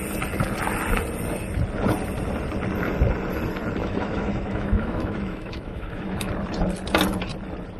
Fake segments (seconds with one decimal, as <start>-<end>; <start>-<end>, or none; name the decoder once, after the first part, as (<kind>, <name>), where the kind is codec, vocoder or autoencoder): 3.8-6.3 (autoencoder, DAC-VAE)